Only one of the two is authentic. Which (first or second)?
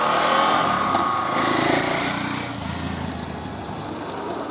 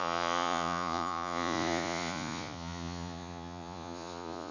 first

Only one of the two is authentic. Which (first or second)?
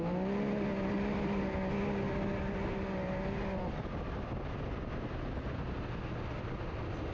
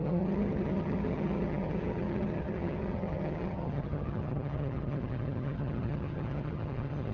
first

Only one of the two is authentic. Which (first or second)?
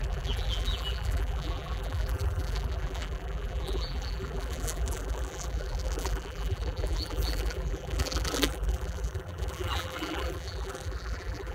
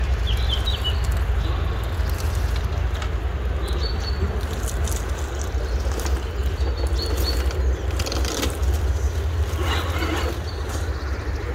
second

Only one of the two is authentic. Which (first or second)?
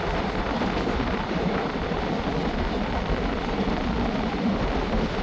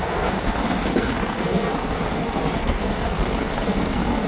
first